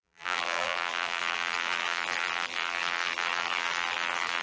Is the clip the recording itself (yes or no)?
no